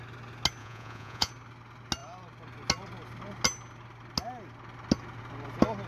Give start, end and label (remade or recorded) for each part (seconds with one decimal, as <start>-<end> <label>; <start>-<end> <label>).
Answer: 0.0-0.6 recorded; 0.6-1.3 remade; 1.3-5.9 recorded